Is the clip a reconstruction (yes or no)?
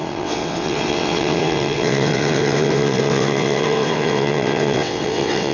yes